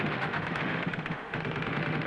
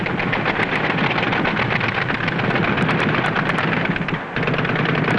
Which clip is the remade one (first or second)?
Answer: first